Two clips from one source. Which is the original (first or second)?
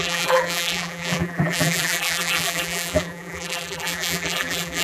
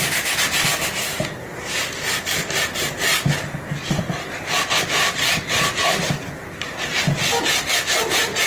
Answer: second